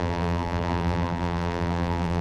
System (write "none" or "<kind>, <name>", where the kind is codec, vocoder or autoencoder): vocoder, BigVGAN v2